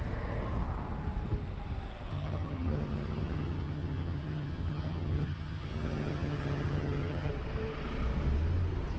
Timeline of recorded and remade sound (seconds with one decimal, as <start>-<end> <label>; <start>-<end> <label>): 0.0-2.1 recorded; 2.1-7.3 remade; 7.3-9.0 recorded